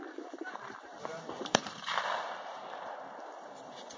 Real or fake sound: fake